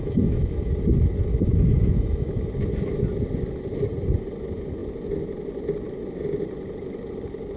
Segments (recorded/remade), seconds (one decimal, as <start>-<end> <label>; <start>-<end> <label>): 0.0-0.8 remade; 0.8-1.3 recorded; 1.3-2.5 remade; 2.5-7.6 recorded